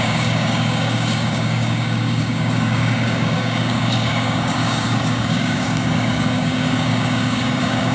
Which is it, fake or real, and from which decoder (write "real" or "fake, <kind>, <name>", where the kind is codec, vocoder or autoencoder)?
fake, codec, DAC